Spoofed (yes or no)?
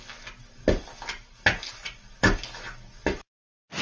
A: no